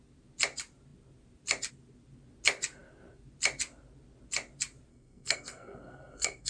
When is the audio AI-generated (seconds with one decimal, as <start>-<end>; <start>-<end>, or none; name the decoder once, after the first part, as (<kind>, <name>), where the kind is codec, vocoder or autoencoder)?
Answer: 4.9-6.5 (codec, SNAC)